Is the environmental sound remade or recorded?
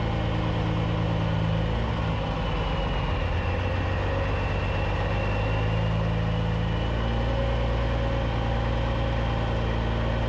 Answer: recorded